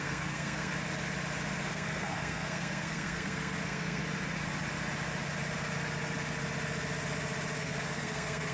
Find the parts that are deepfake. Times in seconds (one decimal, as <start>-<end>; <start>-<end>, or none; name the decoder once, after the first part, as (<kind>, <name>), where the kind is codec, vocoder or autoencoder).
0.0-0.7 (codec, SNAC); 1.7-4.0; 7.6-8.5